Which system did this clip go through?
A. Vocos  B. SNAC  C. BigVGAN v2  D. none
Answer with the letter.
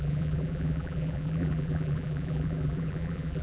C